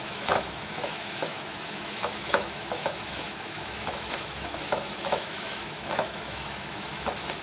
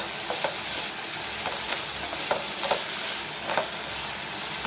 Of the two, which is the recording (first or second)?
second